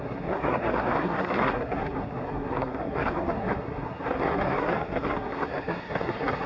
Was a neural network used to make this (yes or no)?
yes